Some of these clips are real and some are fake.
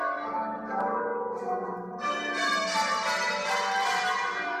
fake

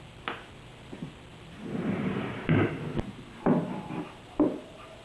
real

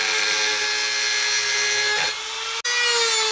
real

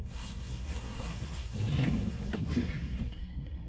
fake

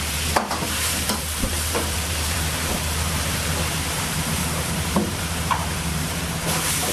fake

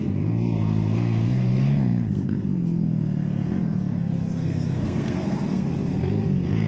fake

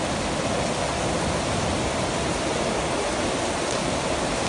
real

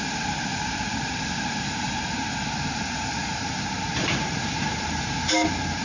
fake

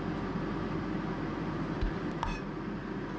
real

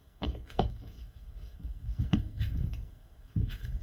fake